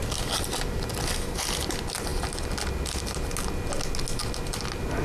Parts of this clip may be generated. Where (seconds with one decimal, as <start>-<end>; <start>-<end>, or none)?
none